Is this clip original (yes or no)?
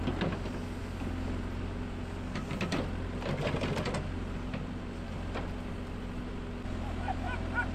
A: yes